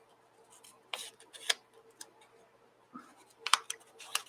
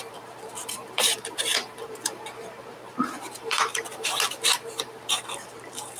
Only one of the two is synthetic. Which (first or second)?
second